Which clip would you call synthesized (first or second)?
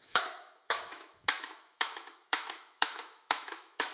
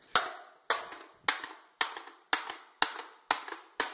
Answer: first